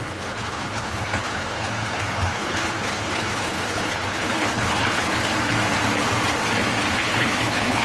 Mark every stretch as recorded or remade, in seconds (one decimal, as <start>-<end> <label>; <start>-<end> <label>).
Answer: 0.0-5.1 remade; 5.1-7.0 recorded; 7.0-7.8 remade